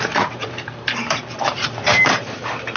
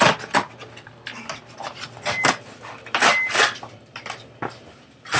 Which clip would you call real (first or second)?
second